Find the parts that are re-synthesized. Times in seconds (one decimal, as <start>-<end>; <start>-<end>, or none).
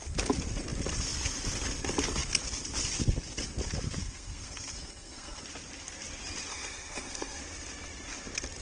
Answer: 4.0-5.4; 6.5-7.4